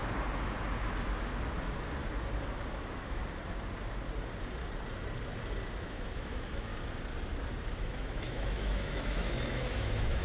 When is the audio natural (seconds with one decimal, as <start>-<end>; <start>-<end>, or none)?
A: 0.0-2.7; 3.2-5.8; 6.7-7.8